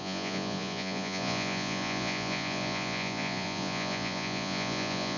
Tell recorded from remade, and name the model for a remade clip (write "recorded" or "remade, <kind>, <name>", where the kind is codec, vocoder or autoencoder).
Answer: remade, vocoder, Vocos